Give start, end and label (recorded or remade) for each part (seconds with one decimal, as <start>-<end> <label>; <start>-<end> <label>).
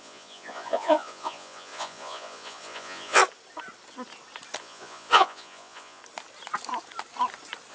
0.0-3.2 remade; 3.2-4.6 recorded; 4.6-6.0 remade; 6.0-7.7 recorded